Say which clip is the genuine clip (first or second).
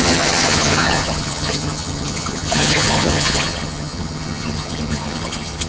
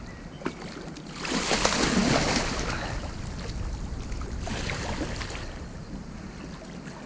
second